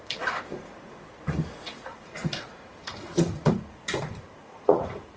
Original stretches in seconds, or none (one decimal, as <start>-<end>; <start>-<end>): 0.0-0.5; 1.0-1.9